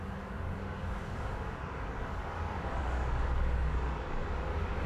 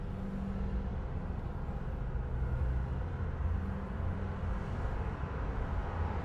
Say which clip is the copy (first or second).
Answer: first